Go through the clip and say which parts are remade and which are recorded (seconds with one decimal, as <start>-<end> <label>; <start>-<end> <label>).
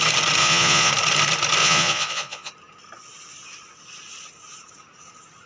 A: 0.0-0.4 recorded; 0.4-0.9 remade; 0.9-1.6 recorded; 1.6-2.5 remade; 2.5-5.5 recorded